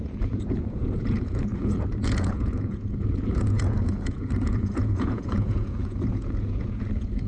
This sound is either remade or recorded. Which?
remade